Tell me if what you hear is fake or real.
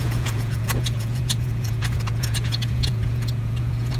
fake